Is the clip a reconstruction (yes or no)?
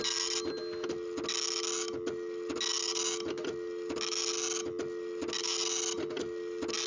no